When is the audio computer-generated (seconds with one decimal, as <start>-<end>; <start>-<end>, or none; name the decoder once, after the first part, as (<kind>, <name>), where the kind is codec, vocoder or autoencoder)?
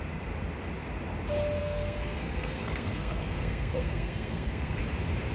1.6-4.8 (codec, SNAC)